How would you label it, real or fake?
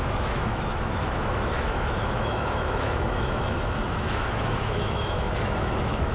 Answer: fake